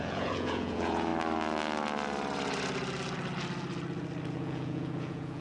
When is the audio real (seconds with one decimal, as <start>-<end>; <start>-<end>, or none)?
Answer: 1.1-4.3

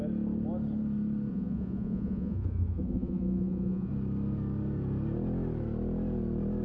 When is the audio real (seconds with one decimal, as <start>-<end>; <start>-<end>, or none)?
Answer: 0.0-1.3; 3.9-6.6

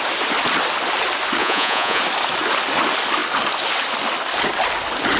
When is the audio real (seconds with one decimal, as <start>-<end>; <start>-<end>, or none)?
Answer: 0.0-1.4; 2.0-5.2

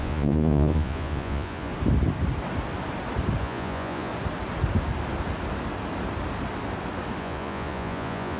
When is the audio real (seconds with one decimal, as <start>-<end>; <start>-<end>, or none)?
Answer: 1.7-3.4; 4.1-7.2

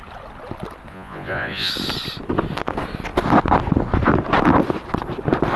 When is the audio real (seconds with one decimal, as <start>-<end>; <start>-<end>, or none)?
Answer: 0.0-0.9; 1.7-5.6